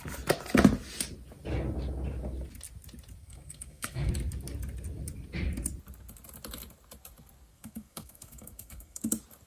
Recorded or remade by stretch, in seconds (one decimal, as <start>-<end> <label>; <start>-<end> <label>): 0.0-3.2 recorded; 3.2-4.1 remade; 4.1-7.5 recorded; 7.5-9.0 remade; 9.0-9.5 recorded